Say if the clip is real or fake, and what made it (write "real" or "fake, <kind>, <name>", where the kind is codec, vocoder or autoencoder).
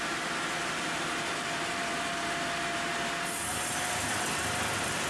real